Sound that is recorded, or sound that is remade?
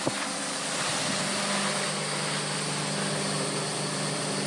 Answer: recorded